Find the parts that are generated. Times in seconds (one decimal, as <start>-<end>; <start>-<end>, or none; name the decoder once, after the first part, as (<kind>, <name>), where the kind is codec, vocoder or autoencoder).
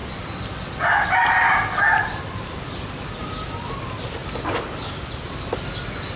none